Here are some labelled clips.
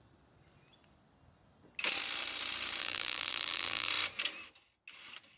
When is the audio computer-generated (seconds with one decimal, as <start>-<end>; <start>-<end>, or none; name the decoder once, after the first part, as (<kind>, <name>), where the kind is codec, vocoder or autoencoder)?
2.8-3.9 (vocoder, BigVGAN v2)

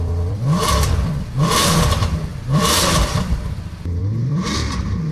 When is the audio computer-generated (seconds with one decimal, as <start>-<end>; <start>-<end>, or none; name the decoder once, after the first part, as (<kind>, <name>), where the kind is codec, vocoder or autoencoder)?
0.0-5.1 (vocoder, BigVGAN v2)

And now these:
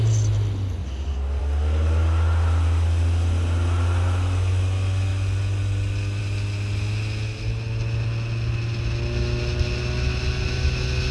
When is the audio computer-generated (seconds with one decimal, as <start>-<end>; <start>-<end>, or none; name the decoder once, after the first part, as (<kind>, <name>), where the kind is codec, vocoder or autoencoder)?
none